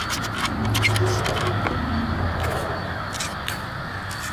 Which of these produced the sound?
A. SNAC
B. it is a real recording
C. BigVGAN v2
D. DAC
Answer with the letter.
B